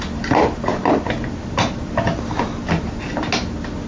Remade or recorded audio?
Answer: recorded